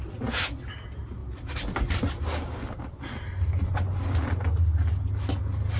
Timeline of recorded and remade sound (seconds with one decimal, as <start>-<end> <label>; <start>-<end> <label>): 0.0-5.8 recorded